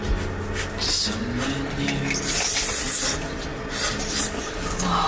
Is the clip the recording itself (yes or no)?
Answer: yes